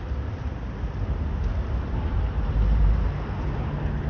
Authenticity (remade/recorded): recorded